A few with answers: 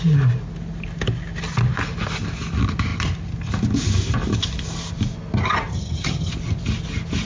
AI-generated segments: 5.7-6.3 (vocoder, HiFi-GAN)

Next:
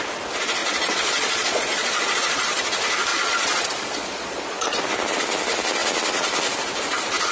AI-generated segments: 0.6-2.6 (vocoder, Vocos); 3.1-4.9

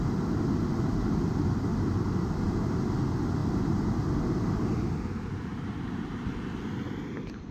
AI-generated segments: 1.7-2.8 (vocoder, BigVGAN v2); 5.5-6.4

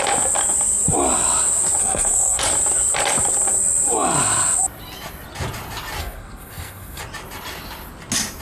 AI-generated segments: 1.8-2.4 (codec, SNAC); 6.0-7.0

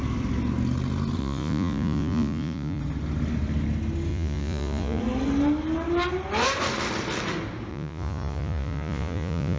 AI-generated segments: 1.2-2.8 (vocoder, Vocos); 4.1-5.0; 7.7-9.6